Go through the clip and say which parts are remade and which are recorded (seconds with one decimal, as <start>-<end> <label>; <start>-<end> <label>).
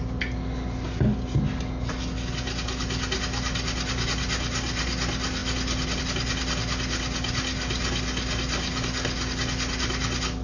0.0-10.4 recorded